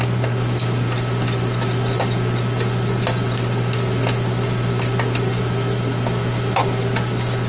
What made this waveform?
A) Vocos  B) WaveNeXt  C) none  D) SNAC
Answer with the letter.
C